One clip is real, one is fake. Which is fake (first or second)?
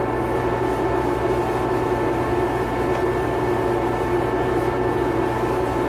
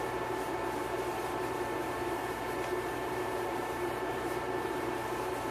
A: second